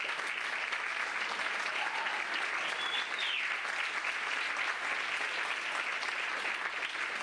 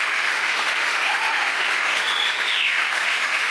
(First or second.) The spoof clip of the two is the second